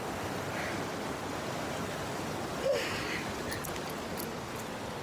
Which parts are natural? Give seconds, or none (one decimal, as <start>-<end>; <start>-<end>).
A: 0.0-5.0